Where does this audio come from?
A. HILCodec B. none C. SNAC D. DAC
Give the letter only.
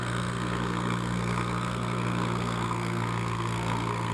C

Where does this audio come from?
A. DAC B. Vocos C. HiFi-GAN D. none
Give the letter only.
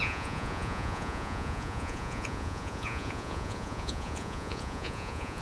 B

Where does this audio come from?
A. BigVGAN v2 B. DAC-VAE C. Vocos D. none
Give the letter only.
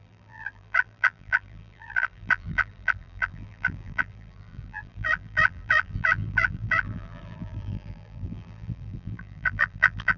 A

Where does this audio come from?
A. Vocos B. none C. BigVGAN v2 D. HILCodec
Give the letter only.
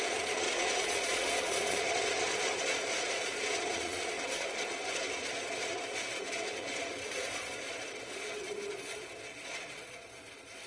A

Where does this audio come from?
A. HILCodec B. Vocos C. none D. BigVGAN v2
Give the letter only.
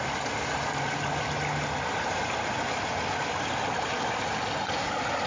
C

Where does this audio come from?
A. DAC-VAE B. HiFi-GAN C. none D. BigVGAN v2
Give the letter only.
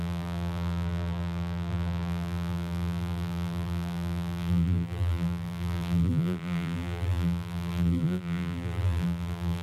D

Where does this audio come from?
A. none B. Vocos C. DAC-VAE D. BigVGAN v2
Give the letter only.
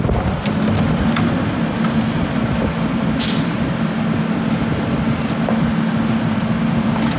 A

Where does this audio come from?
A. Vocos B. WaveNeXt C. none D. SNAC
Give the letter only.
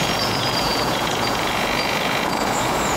A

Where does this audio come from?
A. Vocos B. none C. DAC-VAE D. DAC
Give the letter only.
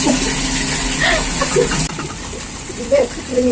B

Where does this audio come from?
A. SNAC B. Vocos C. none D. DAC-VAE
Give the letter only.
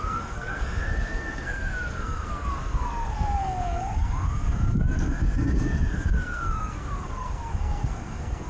A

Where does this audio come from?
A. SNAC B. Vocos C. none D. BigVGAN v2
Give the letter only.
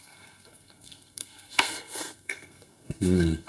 A